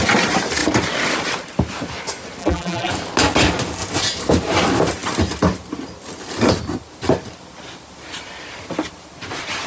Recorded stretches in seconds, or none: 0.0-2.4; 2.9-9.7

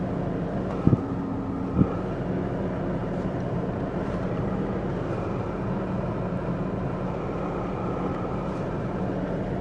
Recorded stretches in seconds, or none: 0.0-3.0; 5.4-8.1; 8.7-9.6

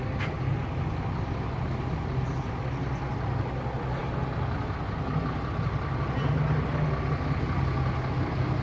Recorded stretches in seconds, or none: 0.0-8.6

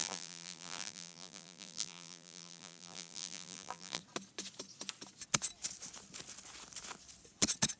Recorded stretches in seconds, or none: 4.0-7.8

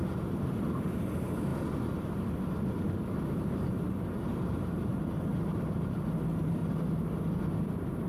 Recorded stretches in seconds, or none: 1.5-3.6; 6.6-7.4

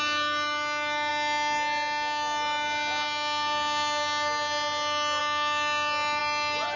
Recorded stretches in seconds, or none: 0.0-6.8